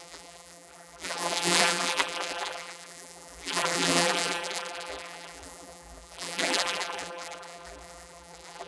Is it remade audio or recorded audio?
remade